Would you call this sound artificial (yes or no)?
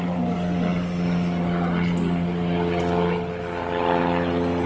no